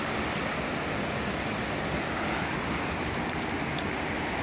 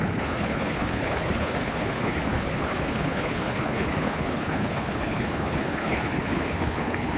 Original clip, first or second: first